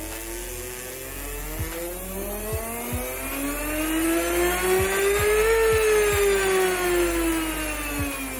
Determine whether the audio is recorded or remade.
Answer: recorded